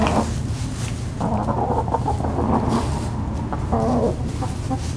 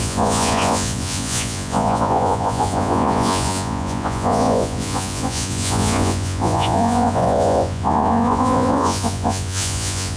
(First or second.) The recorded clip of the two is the first